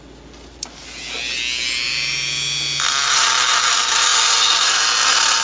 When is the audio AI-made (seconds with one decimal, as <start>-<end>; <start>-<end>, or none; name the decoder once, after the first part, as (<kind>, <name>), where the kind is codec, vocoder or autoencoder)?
none